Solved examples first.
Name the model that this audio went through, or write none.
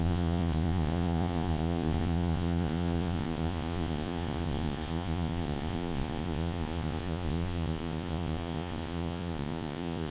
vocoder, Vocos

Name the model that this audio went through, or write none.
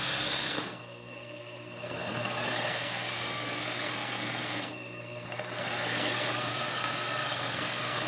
codec, SNAC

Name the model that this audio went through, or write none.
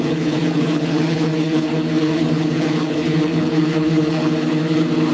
codec, HILCodec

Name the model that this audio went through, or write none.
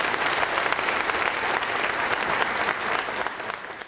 vocoder, BigVGAN v2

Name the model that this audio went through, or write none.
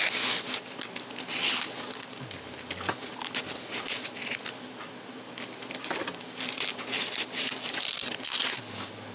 none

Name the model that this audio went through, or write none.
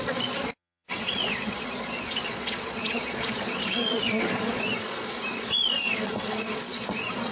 vocoder, Vocos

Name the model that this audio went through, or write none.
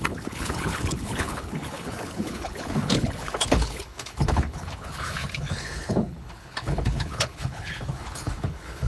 codec, HILCodec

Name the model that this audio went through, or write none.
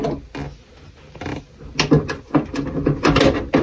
none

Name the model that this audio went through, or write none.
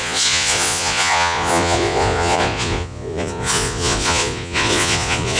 vocoder, Vocos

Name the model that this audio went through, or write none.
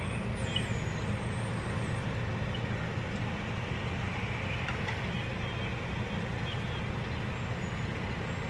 none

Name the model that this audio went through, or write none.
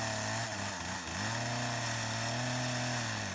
none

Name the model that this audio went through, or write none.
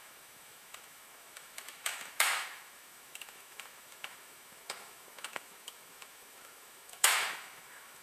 autoencoder, DAC-VAE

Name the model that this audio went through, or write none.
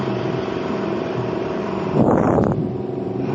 vocoder, BigVGAN v2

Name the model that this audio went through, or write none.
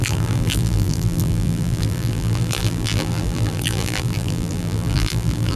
vocoder, BigVGAN v2